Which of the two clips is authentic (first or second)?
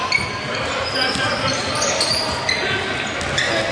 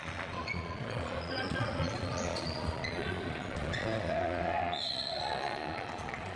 first